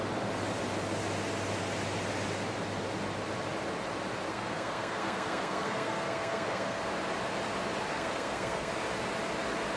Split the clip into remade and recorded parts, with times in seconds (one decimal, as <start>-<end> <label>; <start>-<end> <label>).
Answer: 0.0-4.3 recorded; 4.3-6.8 remade; 6.8-7.9 recorded; 7.9-8.7 remade; 8.7-9.8 recorded